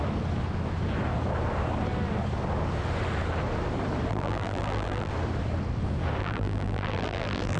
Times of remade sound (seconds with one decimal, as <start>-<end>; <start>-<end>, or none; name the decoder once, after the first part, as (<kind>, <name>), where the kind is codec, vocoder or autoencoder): 4.1-5.1 (vocoder, BigVGAN v2); 6.2-7.6

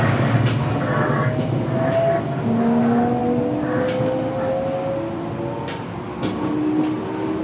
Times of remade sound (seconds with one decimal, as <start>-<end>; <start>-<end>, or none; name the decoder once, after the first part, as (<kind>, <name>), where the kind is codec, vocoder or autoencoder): none